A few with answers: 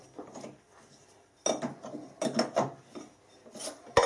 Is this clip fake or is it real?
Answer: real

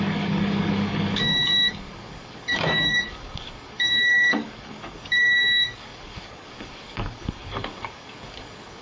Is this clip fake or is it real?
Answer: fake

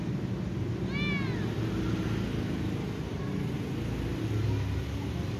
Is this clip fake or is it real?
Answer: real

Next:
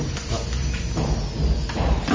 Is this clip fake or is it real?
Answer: real